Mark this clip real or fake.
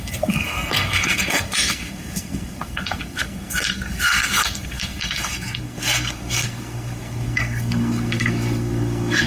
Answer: fake